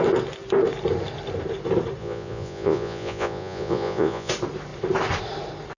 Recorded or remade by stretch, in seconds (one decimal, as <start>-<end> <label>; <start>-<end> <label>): 0.0-2.0 recorded; 2.0-4.3 remade; 4.3-5.8 recorded